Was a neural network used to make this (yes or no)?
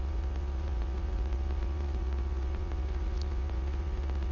yes